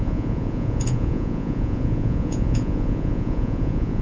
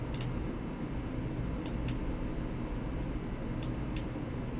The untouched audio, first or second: second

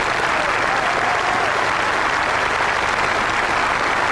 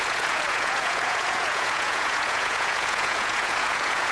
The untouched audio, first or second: first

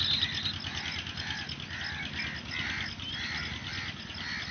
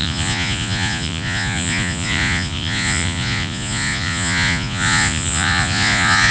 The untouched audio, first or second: first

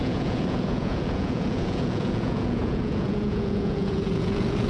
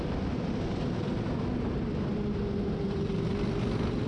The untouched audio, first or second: second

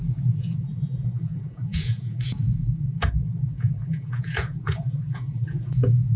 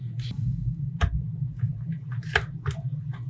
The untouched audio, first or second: second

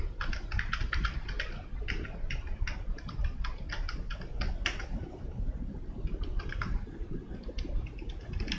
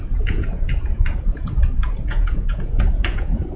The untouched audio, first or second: first